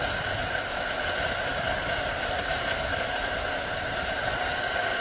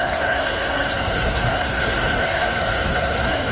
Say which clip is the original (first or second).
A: first